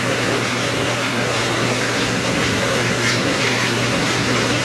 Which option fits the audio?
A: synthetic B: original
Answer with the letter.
A